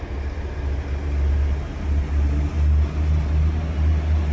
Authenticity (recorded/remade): recorded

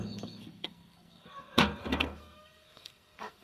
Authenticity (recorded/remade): remade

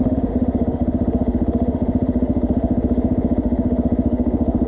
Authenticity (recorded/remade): remade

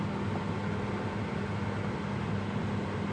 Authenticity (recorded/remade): recorded